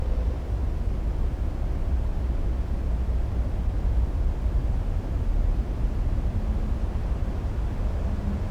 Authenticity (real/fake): real